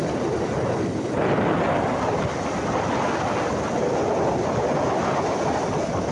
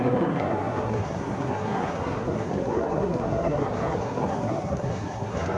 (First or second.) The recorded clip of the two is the first